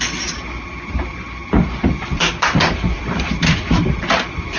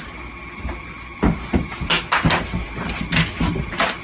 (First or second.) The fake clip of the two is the first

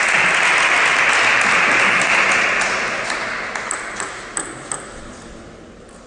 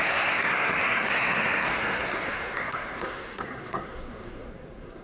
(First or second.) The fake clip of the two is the second